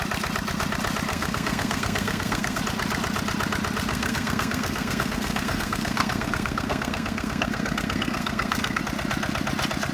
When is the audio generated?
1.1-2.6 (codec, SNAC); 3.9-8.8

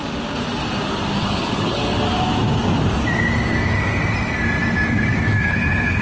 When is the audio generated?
1.2-1.9 (codec, HILCodec); 5.5-6.0

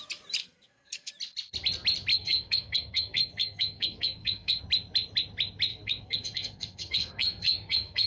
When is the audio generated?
0.4-1.1 (codec, SNAC); 2.1-4.6; 5.7-8.1